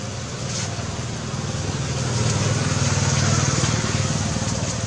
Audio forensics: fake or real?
real